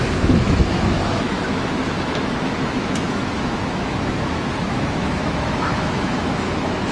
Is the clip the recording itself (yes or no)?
no